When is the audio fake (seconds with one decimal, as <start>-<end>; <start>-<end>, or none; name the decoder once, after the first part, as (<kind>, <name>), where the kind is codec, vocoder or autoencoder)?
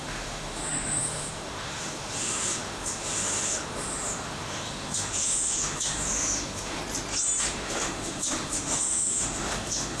0.0-6.8 (autoencoder, DAC-VAE); 7.4-10.0